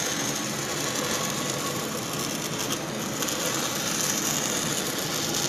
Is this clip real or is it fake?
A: real